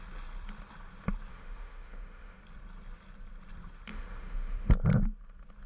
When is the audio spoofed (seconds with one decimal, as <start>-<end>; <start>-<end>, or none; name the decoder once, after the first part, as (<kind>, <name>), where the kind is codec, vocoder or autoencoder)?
1.3-2.4 (autoencoder, DAC-VAE); 3.9-4.7